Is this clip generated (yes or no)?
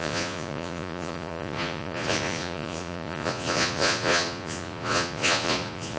yes